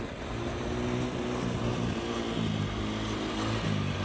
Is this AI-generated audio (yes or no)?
no